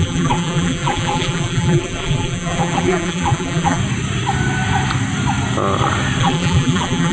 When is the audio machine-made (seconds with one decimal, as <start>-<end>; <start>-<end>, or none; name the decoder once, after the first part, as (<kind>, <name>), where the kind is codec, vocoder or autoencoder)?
0.0-3.8 (vocoder, BigVGAN v2); 6.2-7.1